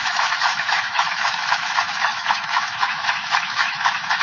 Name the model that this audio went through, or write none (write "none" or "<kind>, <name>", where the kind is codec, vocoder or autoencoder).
autoencoder, DAC-VAE